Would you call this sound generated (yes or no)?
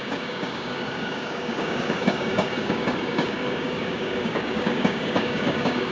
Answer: yes